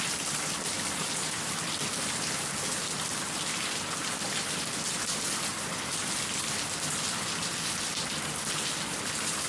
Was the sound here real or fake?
real